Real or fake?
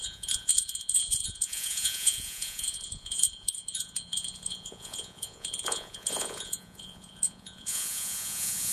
fake